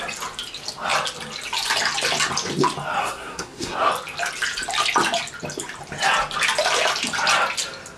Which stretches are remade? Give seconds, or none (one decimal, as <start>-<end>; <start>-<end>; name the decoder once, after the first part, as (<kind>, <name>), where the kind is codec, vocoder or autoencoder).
3.0-3.9 (codec, SNAC)